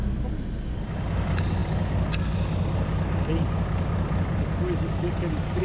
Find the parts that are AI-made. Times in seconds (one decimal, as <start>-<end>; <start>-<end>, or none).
none

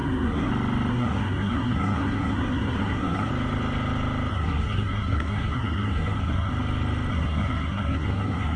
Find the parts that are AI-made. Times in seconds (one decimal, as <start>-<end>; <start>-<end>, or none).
0.0-0.5; 0.9-3.3; 4.3-6.5; 7.1-8.6